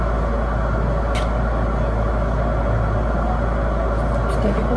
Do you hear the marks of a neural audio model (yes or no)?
no